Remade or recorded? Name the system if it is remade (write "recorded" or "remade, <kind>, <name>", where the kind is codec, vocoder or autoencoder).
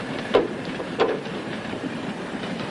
remade, vocoder, BigVGAN v2